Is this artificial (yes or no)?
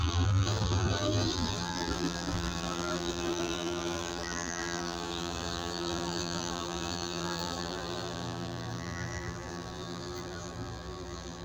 yes